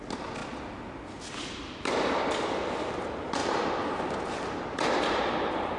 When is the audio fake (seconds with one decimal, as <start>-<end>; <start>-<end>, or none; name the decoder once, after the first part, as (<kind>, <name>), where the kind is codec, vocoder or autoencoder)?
none